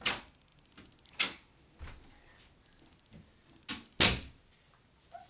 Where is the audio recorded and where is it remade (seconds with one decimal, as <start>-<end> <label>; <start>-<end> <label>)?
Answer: 0.0-5.3 recorded